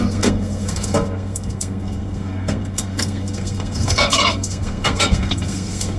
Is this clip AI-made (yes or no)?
yes